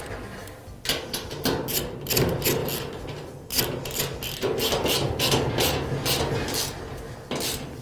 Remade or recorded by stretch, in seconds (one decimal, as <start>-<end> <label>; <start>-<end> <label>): 0.0-7.8 recorded